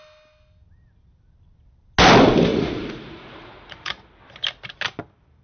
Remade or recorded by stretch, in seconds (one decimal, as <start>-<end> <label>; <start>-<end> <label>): 0.0-2.5 recorded; 2.5-4.2 remade; 4.2-5.4 recorded